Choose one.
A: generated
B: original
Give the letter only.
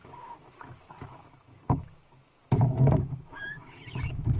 A